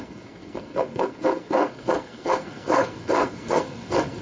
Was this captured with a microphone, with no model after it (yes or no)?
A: no